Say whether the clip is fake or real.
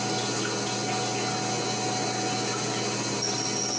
real